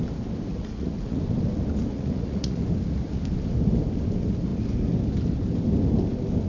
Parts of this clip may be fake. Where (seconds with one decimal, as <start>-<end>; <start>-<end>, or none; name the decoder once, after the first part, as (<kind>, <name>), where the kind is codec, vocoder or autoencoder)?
0.5-1.2 (vocoder, Vocos); 1.9-2.6